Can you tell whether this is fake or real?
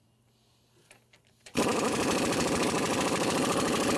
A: real